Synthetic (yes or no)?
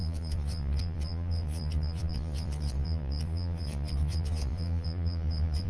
yes